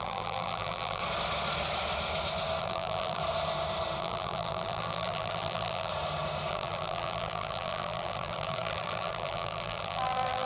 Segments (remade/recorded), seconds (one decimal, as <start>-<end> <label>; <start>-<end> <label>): 0.0-1.0 remade; 1.0-2.6 recorded; 2.6-3.2 remade; 3.2-4.0 recorded; 4.0-5.9 remade; 5.9-6.5 recorded; 6.5-10.5 remade